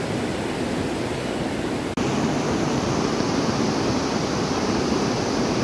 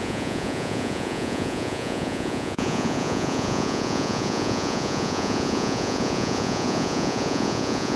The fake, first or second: second